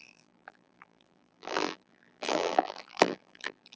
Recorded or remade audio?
remade